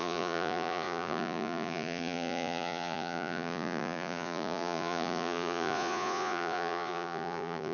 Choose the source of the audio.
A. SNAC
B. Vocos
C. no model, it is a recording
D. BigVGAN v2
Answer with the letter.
B